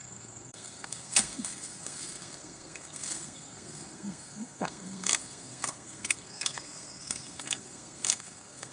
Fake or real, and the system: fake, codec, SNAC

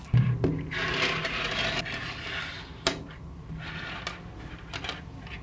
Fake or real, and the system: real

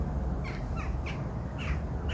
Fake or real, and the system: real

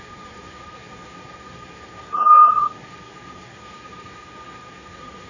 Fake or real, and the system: fake, codec, SNAC